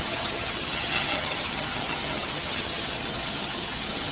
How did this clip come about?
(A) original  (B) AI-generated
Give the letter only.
B